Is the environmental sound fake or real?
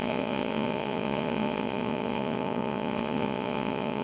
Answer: fake